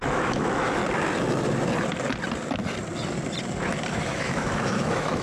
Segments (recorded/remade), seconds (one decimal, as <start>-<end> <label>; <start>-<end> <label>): 0.0-0.8 remade; 0.8-3.9 recorded; 3.9-5.2 remade